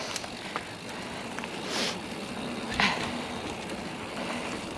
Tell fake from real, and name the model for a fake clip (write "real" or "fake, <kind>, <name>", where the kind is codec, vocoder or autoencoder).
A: real